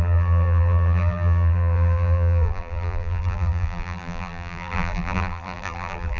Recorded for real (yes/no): no